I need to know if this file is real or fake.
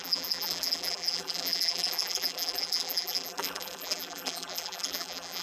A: fake